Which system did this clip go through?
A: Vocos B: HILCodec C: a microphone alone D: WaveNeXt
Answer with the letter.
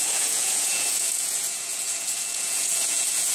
A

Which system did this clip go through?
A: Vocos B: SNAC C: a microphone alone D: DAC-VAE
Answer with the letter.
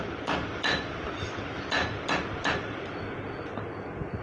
C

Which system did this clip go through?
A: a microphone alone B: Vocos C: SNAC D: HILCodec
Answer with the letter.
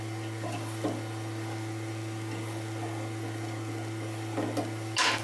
A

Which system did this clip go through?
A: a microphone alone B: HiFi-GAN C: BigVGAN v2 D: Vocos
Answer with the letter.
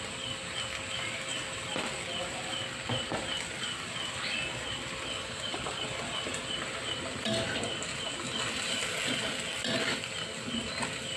A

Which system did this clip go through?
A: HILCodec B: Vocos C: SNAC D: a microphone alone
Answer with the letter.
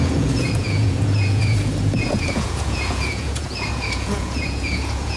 B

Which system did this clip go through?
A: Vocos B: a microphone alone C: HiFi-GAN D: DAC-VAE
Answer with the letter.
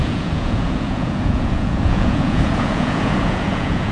A